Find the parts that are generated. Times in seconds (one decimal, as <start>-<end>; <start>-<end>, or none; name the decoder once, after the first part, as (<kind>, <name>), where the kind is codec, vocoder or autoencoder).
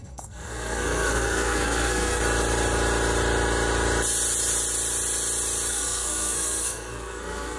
0.0-2.2 (codec, SNAC); 5.7-7.6